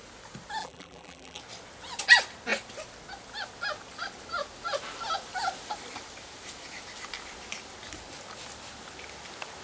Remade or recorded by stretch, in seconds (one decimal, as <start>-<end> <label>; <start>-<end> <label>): 0.0-0.6 recorded; 0.6-1.4 remade; 1.4-9.6 recorded